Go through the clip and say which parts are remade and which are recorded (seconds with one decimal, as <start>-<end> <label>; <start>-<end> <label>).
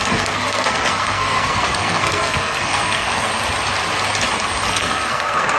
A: 0.0-3.3 remade; 3.3-4.7 recorded; 4.7-5.6 remade